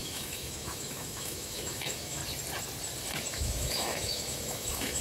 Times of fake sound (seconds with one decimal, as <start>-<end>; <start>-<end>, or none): 0.0-2.2; 3.3-5.0